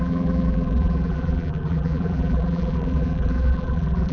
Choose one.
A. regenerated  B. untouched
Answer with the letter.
A